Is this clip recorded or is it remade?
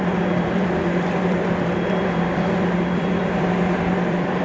remade